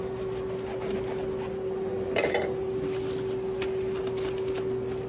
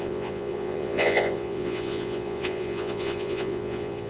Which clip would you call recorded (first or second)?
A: first